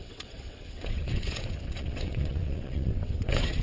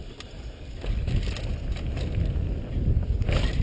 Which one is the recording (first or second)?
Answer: second